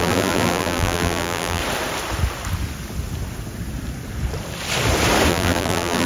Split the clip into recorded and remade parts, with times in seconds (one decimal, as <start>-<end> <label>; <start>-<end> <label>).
0.0-1.6 remade; 1.6-5.3 recorded; 5.3-6.1 remade